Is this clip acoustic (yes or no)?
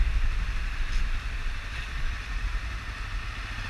yes